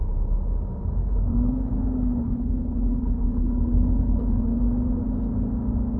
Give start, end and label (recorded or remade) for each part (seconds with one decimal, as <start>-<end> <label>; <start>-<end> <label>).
0.0-1.0 recorded; 1.0-4.6 remade; 4.6-6.0 recorded